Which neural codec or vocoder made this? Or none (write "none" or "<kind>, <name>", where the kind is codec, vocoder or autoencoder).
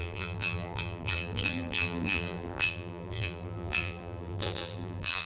vocoder, BigVGAN v2